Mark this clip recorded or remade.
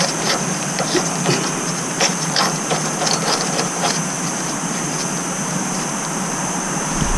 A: remade